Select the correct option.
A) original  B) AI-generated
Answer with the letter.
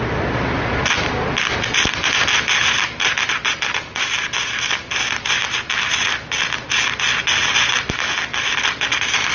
A